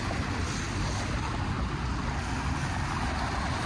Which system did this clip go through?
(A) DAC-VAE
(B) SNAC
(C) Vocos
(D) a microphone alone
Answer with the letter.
D